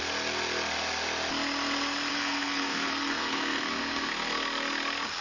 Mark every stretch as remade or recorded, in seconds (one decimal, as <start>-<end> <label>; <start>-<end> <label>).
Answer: 0.0-2.1 recorded; 2.1-4.1 remade; 4.1-5.2 recorded